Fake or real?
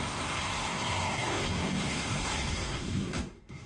fake